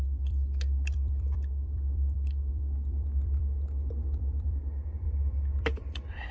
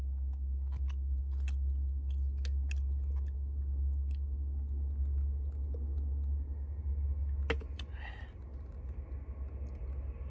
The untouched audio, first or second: second